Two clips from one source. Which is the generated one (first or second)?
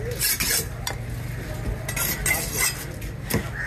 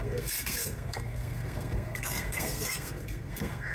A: second